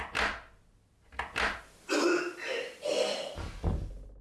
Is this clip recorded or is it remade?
recorded